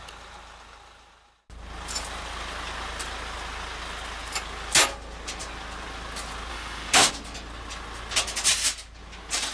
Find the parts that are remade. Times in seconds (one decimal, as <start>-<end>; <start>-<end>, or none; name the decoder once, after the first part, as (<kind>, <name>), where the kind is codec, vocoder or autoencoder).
6.5-7.1 (autoencoder, DAC-VAE)